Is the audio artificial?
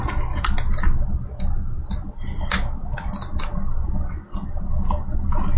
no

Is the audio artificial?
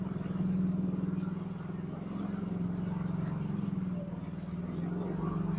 no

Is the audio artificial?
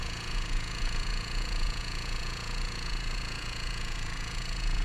yes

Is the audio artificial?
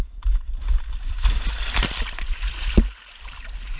no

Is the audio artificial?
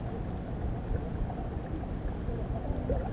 no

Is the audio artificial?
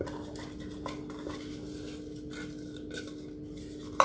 no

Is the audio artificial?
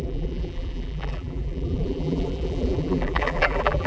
yes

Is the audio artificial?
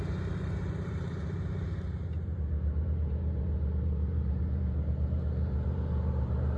yes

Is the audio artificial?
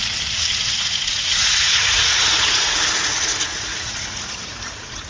yes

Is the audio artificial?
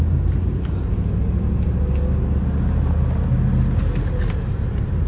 no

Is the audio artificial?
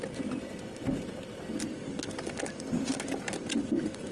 no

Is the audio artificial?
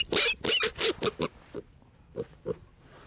no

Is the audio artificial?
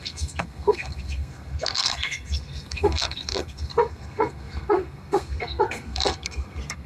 yes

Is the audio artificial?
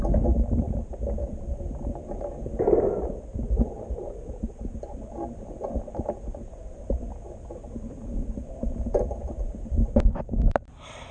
yes